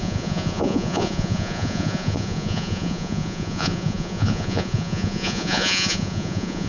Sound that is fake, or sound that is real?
fake